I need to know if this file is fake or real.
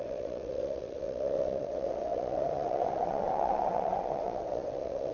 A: fake